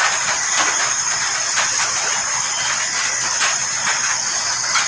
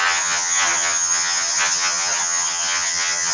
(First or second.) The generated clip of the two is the second